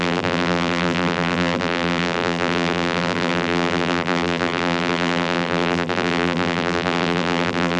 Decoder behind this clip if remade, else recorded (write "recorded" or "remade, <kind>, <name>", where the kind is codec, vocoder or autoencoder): remade, vocoder, BigVGAN v2